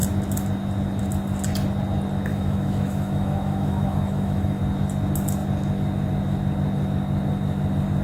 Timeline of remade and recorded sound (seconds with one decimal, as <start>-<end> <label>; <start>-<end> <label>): 0.0-2.3 recorded; 2.3-4.6 remade; 4.6-8.0 recorded